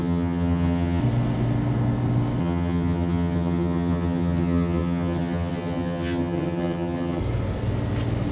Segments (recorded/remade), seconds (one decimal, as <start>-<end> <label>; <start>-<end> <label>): 0.0-1.0 remade; 1.0-2.4 recorded; 2.4-7.2 remade; 7.2-8.3 recorded